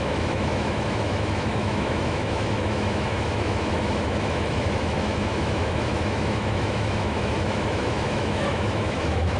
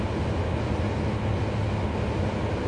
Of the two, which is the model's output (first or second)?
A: first